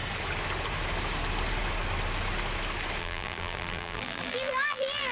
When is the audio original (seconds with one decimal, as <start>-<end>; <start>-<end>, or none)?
0.0-3.0